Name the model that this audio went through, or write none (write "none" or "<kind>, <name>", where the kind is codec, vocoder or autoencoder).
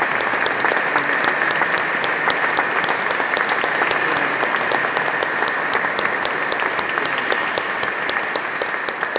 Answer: none